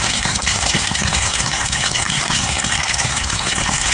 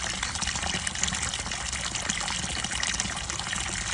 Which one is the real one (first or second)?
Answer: second